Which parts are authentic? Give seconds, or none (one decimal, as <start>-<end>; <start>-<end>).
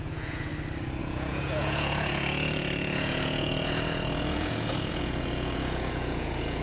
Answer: 0.5-1.0